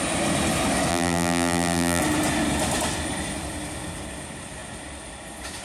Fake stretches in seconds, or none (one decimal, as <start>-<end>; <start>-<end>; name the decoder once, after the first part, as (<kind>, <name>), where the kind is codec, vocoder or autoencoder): 0.9-2.0 (vocoder, BigVGAN v2)